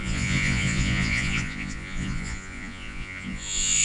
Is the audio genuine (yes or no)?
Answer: no